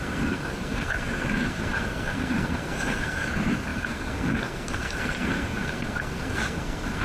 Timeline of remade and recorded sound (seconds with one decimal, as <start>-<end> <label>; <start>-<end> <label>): 0.0-7.0 remade